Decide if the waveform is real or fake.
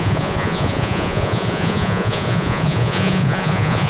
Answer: fake